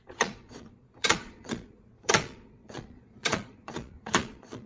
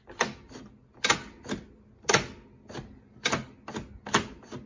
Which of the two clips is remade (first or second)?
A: first